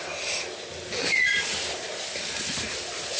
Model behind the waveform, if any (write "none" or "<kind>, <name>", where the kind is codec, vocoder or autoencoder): none